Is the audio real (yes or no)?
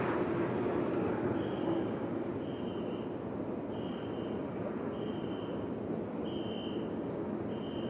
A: yes